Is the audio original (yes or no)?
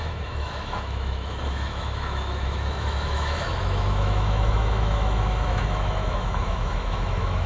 no